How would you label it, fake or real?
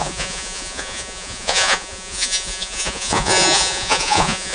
fake